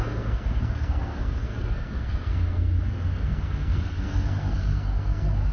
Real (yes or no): no